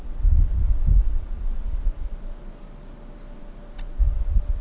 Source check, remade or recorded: recorded